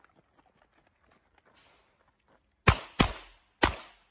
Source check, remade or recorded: recorded